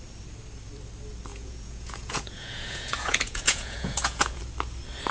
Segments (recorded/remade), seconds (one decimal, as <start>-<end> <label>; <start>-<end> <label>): 0.0-1.3 recorded; 1.3-4.4 remade; 4.4-5.1 recorded